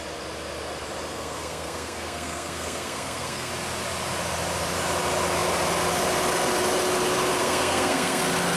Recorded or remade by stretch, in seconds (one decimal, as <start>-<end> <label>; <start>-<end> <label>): 0.0-1.1 recorded; 1.1-3.5 remade; 3.5-7.4 recorded; 7.4-8.2 remade; 8.2-8.6 recorded

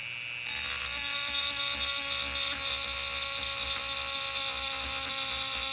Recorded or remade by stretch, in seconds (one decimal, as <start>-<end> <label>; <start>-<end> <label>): 0.0-5.7 recorded